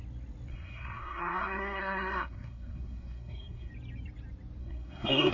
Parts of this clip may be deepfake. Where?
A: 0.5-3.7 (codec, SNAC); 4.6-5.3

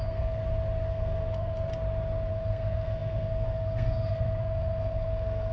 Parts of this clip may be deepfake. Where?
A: 0.0-0.4 (codec, SNAC); 0.9-1.7; 2.3-5.5